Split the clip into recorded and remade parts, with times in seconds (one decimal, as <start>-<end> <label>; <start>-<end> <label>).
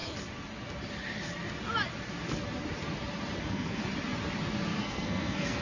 0.0-3.4 recorded; 3.4-3.8 remade; 3.8-4.8 recorded; 4.8-5.6 remade